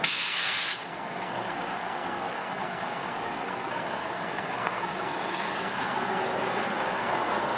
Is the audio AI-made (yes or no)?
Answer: yes